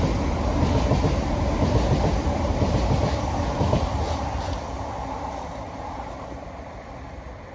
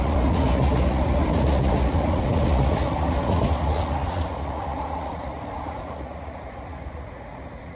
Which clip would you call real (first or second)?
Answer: first